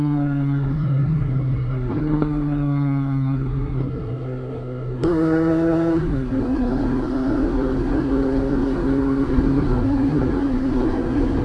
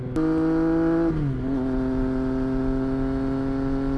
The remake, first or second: first